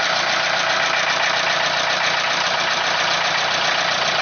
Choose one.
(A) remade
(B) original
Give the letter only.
B